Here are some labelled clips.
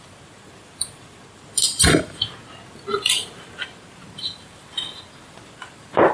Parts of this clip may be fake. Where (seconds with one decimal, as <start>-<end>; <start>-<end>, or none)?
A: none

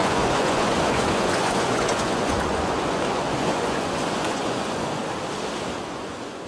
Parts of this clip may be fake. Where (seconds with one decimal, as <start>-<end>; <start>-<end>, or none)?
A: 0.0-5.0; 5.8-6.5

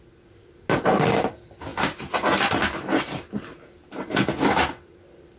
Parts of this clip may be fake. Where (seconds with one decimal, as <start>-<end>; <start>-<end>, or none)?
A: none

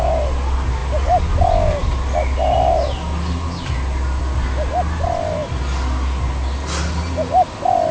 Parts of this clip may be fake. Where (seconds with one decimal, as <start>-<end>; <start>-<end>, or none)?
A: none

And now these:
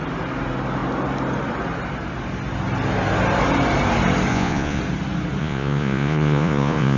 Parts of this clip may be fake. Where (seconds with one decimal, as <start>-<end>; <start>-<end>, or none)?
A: 4.3-4.8; 5.4-7.0

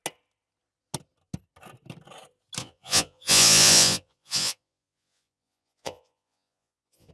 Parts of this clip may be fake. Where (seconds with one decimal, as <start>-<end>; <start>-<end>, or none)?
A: 2.6-7.1

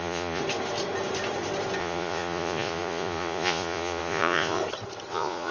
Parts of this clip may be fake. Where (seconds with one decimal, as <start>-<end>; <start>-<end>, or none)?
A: 0.0-0.4; 1.8-4.6; 5.1-5.5